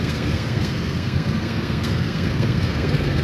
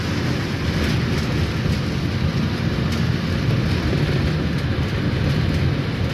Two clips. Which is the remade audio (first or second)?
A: first